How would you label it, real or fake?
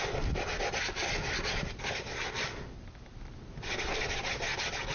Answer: real